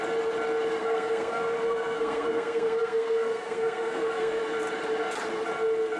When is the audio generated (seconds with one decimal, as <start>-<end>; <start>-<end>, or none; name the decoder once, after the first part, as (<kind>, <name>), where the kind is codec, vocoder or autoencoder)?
0.8-4.4 (codec, SNAC)